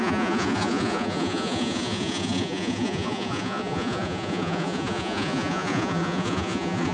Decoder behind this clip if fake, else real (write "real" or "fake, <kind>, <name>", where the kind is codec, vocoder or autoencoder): fake, vocoder, Vocos